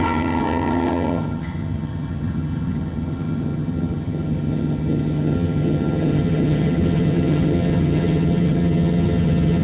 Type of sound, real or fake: fake